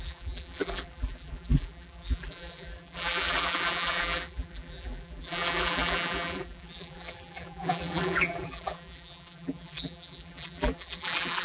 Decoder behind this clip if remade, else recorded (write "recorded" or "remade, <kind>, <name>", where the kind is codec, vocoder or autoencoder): remade, vocoder, BigVGAN v2